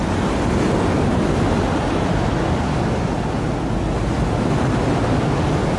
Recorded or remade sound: recorded